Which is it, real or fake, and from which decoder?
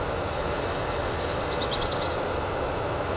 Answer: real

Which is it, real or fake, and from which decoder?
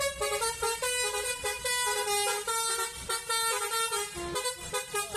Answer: real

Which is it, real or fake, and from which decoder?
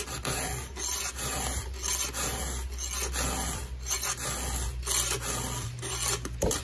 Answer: real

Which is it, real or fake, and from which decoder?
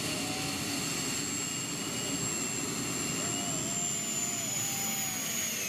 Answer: real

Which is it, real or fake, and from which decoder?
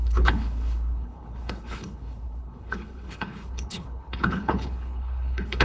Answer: fake, codec, HILCodec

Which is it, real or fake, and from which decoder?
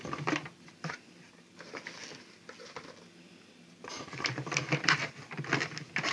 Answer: real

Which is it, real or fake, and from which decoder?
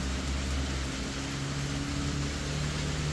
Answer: real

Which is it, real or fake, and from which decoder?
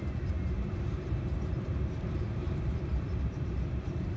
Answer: fake, vocoder, BigVGAN v2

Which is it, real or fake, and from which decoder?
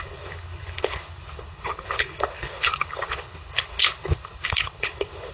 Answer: fake, codec, HILCodec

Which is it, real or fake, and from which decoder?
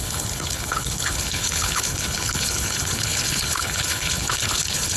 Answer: fake, codec, HILCodec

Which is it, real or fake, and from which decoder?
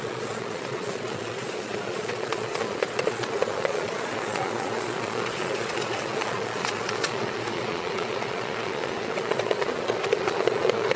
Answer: fake, vocoder, Vocos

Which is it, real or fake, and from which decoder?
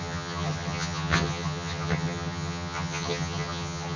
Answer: fake, vocoder, HiFi-GAN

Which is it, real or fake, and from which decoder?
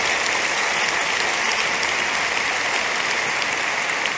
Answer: real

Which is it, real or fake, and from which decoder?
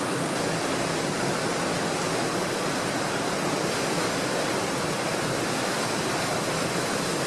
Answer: real